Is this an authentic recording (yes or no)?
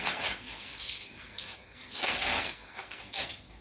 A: no